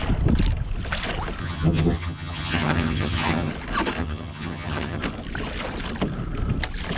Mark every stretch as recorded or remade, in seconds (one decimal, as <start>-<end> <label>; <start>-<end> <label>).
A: 0.0-1.4 recorded; 1.4-3.5 remade; 3.5-4.0 recorded; 4.0-5.0 remade; 5.0-7.0 recorded